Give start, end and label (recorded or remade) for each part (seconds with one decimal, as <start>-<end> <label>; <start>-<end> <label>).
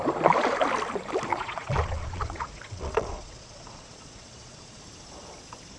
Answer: 0.0-1.3 recorded; 1.3-4.8 remade; 4.8-5.8 recorded